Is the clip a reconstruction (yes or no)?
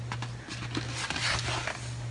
no